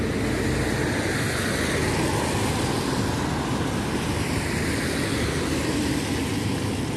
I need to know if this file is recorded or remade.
recorded